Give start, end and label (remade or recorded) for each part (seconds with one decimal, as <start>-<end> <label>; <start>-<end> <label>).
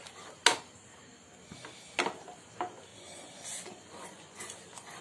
0.0-2.9 recorded; 2.9-5.0 remade